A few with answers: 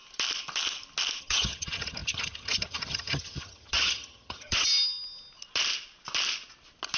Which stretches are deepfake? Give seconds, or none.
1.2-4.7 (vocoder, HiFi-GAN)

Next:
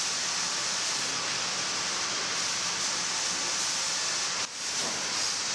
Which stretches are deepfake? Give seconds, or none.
none

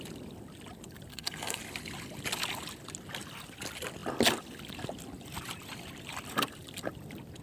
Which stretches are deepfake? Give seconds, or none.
1.1-1.6 (codec, SNAC)

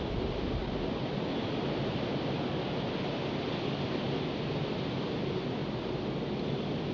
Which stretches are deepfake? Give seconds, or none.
none